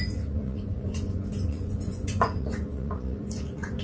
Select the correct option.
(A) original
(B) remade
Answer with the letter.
B